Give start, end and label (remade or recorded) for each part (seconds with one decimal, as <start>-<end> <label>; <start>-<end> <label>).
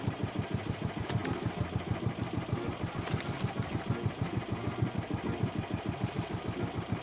0.0-7.0 recorded